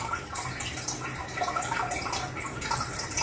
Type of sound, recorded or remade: recorded